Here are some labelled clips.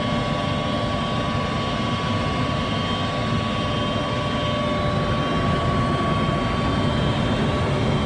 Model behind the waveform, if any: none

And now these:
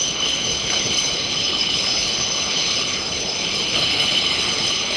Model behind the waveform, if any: codec, HILCodec